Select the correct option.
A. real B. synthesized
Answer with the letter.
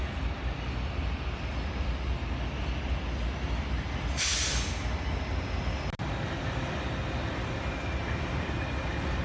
A